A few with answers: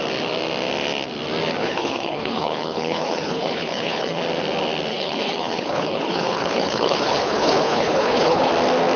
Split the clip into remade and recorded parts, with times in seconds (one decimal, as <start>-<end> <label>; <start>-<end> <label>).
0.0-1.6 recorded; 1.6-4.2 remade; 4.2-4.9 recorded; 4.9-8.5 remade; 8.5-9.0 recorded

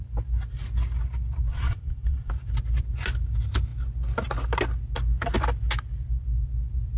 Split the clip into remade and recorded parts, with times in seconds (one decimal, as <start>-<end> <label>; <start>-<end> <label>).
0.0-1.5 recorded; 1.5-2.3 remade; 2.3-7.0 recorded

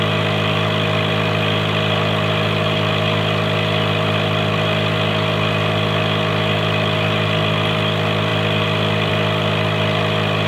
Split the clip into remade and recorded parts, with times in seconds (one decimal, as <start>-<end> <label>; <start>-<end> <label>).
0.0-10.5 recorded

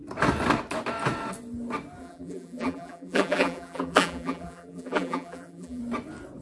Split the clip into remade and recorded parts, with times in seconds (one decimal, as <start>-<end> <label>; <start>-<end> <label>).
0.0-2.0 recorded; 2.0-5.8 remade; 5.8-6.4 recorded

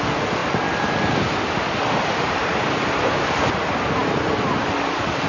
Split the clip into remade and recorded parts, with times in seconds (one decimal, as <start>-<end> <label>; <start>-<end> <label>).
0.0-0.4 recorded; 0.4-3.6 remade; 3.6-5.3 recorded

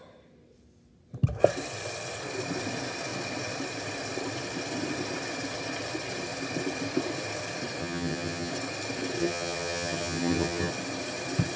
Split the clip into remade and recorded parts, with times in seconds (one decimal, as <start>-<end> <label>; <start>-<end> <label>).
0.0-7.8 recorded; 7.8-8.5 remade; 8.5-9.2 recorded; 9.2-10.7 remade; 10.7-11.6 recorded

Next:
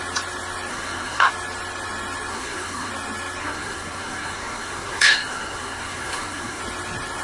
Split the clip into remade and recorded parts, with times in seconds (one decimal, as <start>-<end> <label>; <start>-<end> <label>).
0.0-0.7 recorded; 0.7-1.3 remade; 1.3-2.3 recorded; 2.3-2.9 remade; 2.9-3.4 recorded; 3.4-6.6 remade; 6.6-7.2 recorded